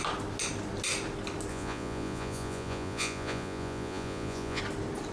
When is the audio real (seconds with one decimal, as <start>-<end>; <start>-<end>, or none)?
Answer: 0.0-1.5; 4.6-5.1